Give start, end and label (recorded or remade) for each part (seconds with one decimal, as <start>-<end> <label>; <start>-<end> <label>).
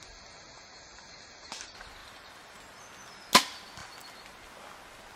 0.0-2.0 recorded; 2.0-2.6 remade; 2.6-5.2 recorded